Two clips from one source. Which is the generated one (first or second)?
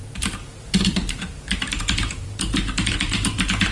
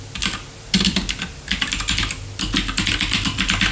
first